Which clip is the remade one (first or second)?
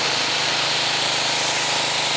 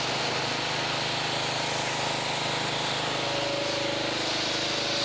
first